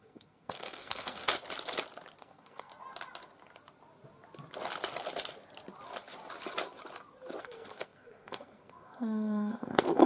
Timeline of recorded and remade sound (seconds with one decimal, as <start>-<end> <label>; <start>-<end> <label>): 0.0-1.3 remade; 1.3-2.2 recorded; 2.2-2.7 remade; 2.7-7.4 recorded; 7.4-10.1 remade

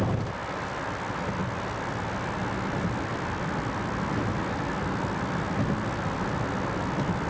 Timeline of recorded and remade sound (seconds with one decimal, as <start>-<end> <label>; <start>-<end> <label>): 0.0-7.3 recorded